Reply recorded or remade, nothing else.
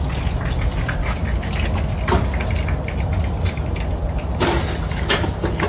recorded